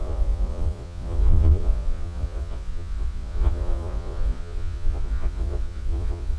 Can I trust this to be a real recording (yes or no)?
no